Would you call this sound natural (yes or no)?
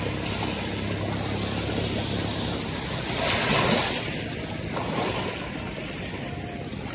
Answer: yes